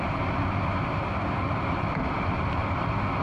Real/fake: real